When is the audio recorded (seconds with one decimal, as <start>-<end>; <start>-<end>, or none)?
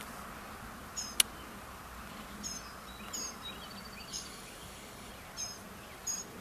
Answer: 0.0-4.1; 5.1-6.4